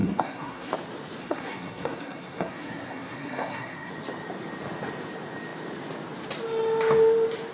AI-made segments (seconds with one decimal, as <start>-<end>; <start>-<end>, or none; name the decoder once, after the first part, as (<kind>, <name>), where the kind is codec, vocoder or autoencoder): 0.0-0.7 (codec, SNAC); 1.2-3.9